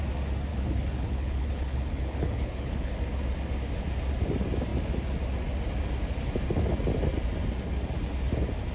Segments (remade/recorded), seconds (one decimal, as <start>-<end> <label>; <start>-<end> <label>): 0.0-0.5 recorded; 0.5-3.0 remade; 3.0-8.7 recorded